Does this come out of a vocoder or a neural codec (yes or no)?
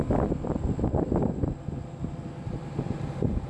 no